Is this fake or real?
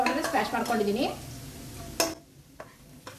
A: real